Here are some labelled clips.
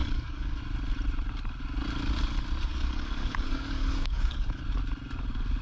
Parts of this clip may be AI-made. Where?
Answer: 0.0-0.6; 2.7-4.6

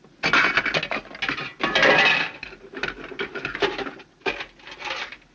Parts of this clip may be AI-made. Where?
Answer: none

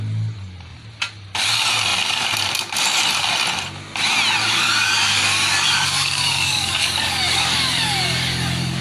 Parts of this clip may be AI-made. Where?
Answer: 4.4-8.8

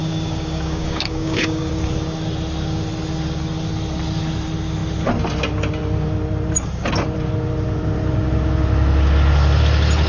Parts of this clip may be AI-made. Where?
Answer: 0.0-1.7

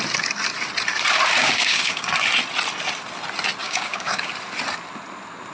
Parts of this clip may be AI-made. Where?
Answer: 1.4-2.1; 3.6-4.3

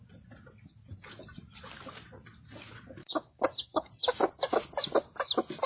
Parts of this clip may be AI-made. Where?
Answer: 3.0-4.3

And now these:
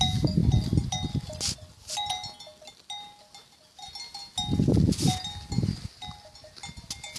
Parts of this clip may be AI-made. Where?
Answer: none

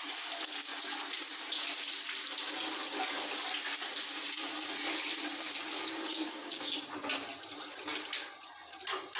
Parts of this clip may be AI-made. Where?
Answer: 6.1-6.7